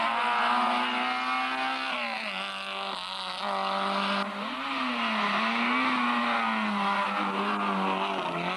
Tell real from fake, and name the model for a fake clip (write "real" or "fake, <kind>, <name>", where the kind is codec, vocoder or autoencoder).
real